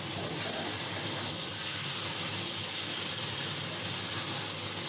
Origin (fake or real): real